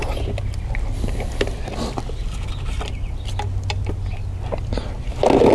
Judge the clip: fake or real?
real